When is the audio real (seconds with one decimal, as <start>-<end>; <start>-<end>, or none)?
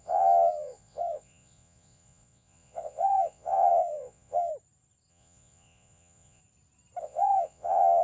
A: 4.5-5.1; 6.4-7.0